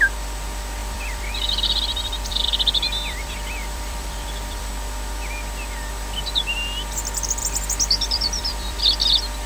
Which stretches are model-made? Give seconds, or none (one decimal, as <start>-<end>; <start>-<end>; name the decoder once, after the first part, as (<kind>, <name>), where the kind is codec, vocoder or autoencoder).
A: 0.8-4.7 (vocoder, BigVGAN v2); 7.4-8.8